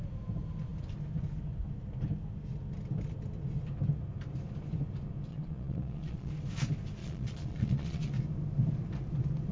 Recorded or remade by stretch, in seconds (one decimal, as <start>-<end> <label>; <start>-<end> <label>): 0.0-5.3 recorded; 5.3-6.3 remade; 6.3-7.0 recorded; 7.0-8.1 remade; 8.1-9.5 recorded